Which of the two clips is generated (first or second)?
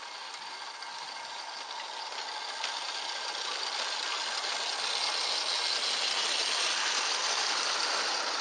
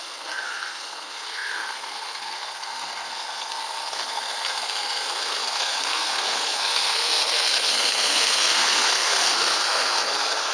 second